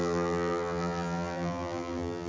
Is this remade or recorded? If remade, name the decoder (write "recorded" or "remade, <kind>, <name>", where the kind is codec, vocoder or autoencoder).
remade, vocoder, BigVGAN v2